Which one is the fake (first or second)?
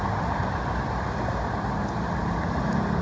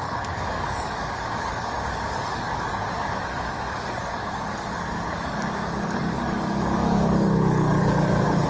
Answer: second